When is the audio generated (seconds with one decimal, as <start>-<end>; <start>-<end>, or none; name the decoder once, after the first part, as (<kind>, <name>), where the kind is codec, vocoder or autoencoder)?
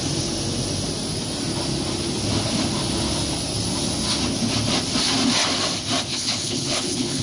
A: 6.1-7.2 (codec, HILCodec)